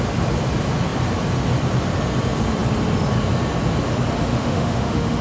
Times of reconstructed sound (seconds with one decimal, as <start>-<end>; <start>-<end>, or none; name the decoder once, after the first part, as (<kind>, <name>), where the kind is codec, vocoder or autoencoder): 4.3-5.2 (autoencoder, DAC-VAE)